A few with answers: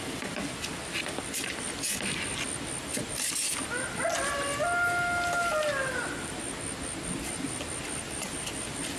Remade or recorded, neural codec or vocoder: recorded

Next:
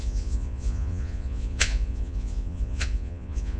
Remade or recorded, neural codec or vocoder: remade, vocoder, Vocos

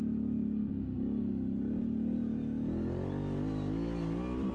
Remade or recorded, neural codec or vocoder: recorded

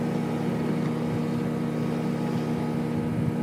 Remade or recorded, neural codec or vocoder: recorded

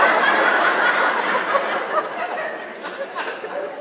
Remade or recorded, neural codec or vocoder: recorded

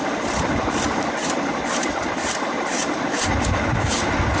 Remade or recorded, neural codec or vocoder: remade, vocoder, BigVGAN v2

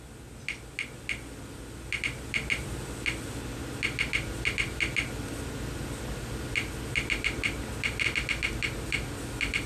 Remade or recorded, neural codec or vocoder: recorded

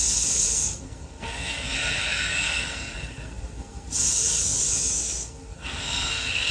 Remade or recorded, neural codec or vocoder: remade, codec, SNAC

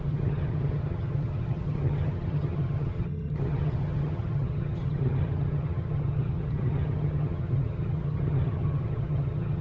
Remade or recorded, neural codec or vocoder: remade, vocoder, HiFi-GAN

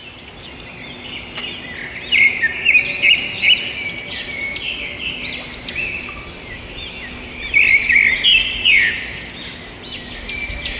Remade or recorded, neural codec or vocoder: recorded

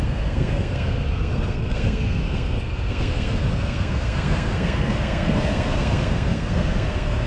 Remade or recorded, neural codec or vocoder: remade, codec, SNAC